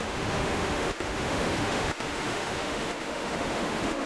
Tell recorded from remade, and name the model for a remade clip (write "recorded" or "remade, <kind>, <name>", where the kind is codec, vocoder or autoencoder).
remade, autoencoder, DAC-VAE